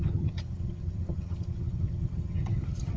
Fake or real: fake